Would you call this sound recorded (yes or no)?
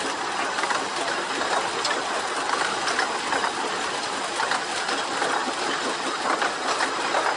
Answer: yes